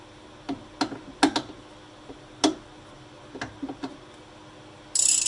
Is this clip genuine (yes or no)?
yes